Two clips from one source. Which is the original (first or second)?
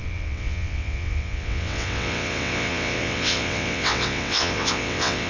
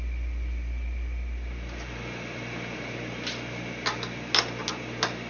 second